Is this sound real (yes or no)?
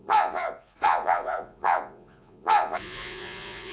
no